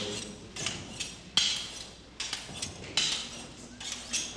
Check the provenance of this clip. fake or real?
real